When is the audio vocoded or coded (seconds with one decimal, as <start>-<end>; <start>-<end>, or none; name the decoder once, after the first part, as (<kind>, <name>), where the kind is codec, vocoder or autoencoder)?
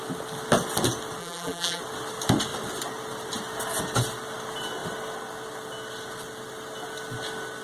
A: 1.2-1.8 (vocoder, BigVGAN v2)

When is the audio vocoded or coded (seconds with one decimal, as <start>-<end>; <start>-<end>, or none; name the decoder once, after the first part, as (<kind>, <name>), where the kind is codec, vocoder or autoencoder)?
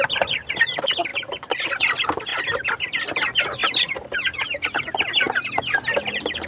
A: 1.1-1.7 (vocoder, BigVGAN v2); 2.3-3.1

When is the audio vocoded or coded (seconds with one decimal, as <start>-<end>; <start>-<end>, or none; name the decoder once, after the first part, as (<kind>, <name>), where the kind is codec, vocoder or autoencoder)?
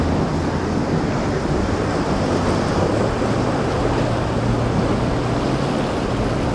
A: none